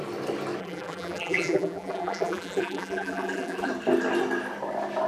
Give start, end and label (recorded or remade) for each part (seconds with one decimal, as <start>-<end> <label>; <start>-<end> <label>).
0.0-0.6 recorded; 0.6-3.7 remade; 3.7-5.1 recorded